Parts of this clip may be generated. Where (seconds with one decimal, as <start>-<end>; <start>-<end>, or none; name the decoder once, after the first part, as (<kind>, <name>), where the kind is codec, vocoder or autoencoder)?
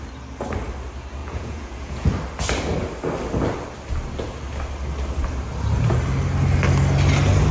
1.2-2.1 (vocoder, Vocos)